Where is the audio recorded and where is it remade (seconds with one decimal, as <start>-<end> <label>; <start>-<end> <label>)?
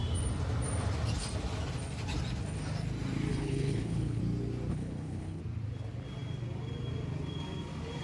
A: 0.0-3.3 recorded; 3.3-4.2 remade; 4.2-4.7 recorded; 4.7-5.4 remade; 5.4-8.0 recorded